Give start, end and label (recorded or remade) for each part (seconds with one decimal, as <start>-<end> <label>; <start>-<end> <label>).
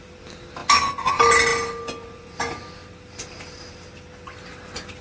0.0-5.0 recorded